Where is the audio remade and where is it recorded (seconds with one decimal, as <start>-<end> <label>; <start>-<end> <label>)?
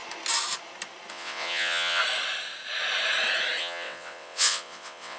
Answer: 0.0-1.1 recorded; 1.1-2.0 remade; 2.0-3.6 recorded; 3.6-5.2 remade